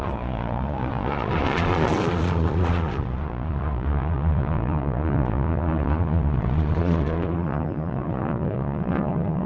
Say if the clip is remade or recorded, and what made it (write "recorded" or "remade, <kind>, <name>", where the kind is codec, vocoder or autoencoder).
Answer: remade, vocoder, Vocos